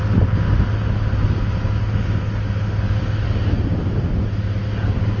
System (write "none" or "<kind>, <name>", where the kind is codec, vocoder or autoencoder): none